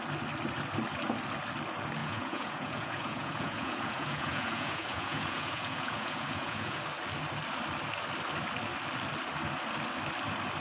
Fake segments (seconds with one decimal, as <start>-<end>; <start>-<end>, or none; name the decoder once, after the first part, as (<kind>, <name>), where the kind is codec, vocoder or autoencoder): 2.0-6.8 (vocoder, Vocos)